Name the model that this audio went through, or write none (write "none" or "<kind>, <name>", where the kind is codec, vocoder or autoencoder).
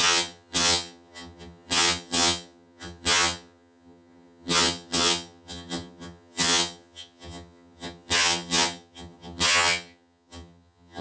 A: vocoder, HiFi-GAN